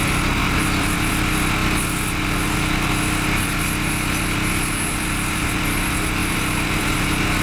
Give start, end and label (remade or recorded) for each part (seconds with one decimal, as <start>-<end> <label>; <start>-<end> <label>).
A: 0.0-0.4 recorded; 0.4-1.1 remade; 1.1-6.2 recorded; 6.2-6.8 remade; 6.8-7.4 recorded